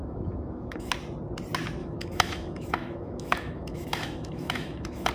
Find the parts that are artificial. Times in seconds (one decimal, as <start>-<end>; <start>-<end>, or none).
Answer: 0.0-0.9; 1.8-5.1

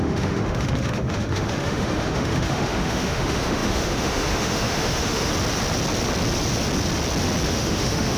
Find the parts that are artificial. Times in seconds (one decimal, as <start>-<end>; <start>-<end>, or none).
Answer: 0.0-5.3; 7.5-8.2

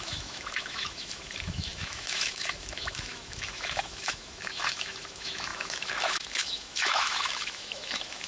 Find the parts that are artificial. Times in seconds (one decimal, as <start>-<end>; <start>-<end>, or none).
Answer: 0.0-8.3

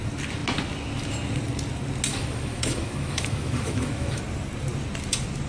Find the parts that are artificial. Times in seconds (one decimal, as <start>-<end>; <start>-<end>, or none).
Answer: 2.1-4.2

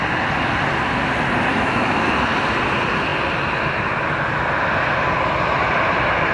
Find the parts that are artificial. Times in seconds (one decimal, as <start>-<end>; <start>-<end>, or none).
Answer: 1.5-2.1

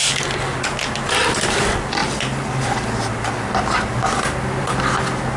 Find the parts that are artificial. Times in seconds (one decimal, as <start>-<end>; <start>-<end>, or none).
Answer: none

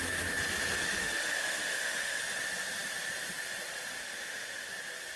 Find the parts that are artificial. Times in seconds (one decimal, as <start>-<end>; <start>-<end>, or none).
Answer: 1.0-2.2; 4.0-4.7

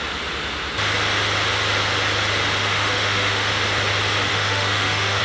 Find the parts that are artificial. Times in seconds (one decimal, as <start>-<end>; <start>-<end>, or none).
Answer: 2.6-3.5; 4.3-5.2